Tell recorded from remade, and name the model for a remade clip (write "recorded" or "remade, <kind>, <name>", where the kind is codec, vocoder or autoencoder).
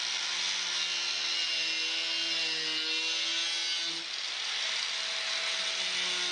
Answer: recorded